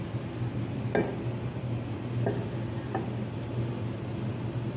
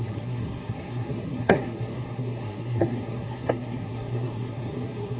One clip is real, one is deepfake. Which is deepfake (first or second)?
second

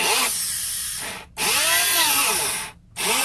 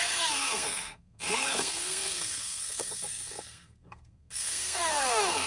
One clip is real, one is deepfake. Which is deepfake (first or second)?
second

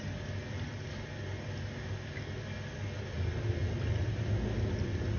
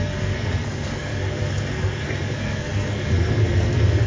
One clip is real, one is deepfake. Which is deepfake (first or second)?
second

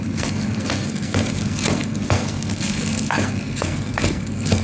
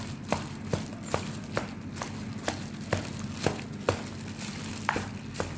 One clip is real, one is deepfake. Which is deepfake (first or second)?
first